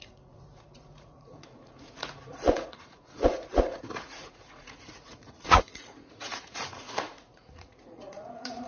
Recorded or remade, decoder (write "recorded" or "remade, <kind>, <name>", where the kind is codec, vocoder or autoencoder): remade, vocoder, Vocos